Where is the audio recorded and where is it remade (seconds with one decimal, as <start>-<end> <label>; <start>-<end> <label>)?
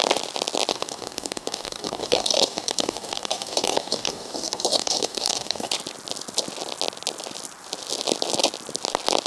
0.0-0.7 recorded; 0.7-5.7 remade; 5.7-9.3 recorded